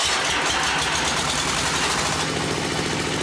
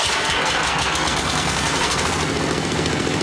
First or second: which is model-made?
second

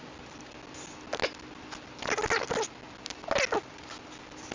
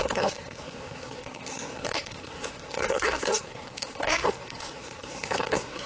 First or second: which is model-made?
second